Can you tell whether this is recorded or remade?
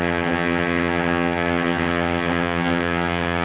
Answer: remade